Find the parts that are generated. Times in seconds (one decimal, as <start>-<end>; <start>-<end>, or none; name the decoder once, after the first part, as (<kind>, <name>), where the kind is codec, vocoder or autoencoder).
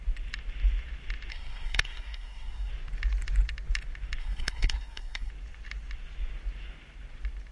1.3-2.7 (codec, SNAC); 4.2-5.3